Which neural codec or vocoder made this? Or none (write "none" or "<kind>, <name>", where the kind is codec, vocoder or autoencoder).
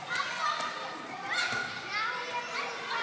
none